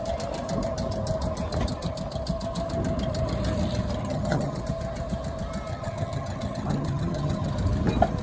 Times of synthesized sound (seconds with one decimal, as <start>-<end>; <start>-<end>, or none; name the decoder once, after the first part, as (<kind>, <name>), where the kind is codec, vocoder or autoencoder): 4.0-4.6 (vocoder, HiFi-GAN); 5.7-7.5